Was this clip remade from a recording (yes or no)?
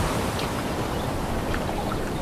yes